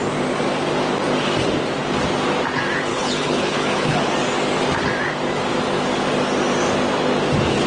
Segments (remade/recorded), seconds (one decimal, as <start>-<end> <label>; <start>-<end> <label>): 0.0-2.9 recorded; 2.9-4.0 remade; 4.0-7.7 recorded